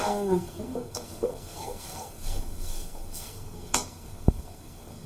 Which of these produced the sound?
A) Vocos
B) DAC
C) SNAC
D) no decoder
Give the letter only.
C